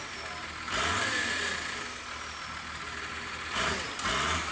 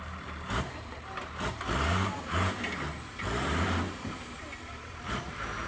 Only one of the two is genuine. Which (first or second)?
first